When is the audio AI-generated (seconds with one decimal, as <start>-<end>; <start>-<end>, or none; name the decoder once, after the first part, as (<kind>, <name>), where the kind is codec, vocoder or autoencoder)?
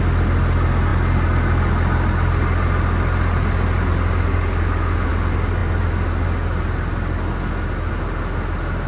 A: none